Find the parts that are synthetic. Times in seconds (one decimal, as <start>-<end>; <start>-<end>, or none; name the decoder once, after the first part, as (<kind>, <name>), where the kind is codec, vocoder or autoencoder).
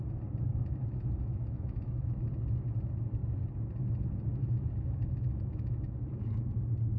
0.5-2.3 (autoencoder, DAC-VAE); 4.3-6.5